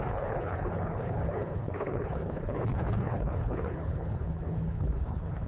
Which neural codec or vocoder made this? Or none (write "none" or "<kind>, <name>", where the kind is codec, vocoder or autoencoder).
codec, HILCodec